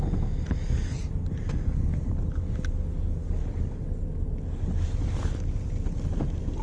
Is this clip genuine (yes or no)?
yes